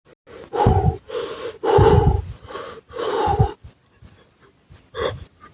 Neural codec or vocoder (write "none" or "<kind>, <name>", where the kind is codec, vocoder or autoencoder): none